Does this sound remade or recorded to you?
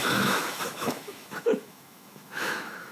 remade